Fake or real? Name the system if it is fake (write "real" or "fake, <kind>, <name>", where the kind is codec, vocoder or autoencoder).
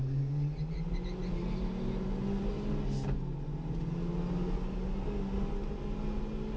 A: real